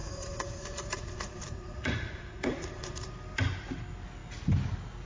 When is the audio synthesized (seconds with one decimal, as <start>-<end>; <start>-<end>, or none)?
0.0-3.1